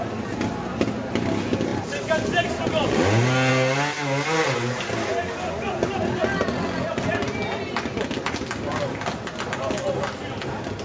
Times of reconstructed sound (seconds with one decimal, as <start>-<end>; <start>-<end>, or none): none